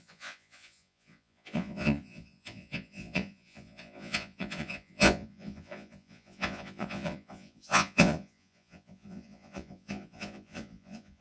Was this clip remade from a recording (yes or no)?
yes